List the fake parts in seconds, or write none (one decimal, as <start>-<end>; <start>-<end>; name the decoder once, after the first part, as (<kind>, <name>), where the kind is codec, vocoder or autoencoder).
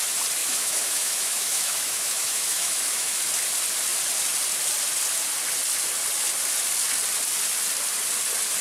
0.4-3.2 (autoencoder, DAC-VAE)